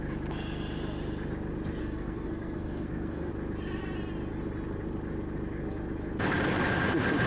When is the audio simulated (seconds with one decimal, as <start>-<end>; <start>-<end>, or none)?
1.8-3.3

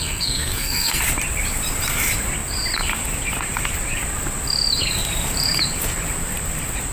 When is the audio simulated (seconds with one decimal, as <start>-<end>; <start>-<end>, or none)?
0.0-1.0

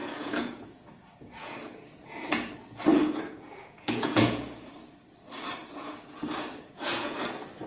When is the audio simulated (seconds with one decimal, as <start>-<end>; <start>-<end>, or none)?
0.0-2.5; 2.9-4.7; 5.6-7.2

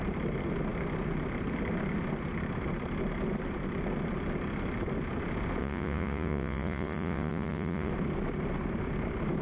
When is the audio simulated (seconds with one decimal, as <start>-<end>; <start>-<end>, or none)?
5.6-7.9

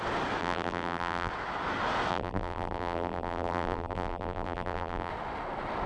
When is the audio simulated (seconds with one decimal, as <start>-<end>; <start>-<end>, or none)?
0.4-1.3; 2.1-5.1